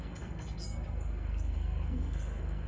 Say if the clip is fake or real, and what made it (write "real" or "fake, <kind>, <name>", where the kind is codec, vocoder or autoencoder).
fake, codec, SNAC